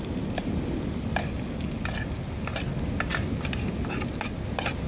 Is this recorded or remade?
recorded